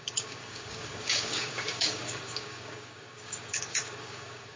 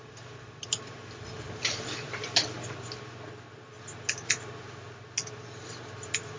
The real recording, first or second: second